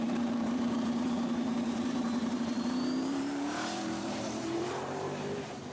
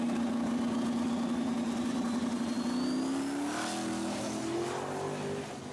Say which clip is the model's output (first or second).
first